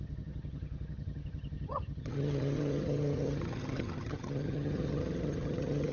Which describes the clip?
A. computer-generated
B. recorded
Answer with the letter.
A